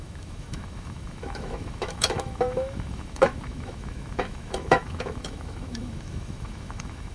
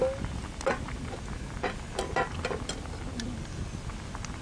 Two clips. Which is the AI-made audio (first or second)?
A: first